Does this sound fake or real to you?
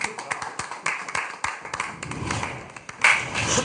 real